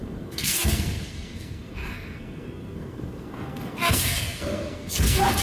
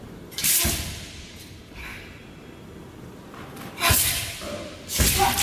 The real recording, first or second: second